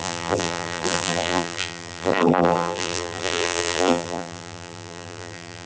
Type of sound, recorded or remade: remade